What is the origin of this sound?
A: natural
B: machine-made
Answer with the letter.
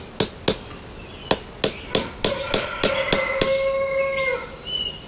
A